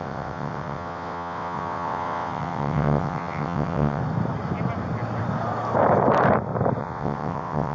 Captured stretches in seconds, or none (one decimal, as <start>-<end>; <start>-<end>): 4.0-6.8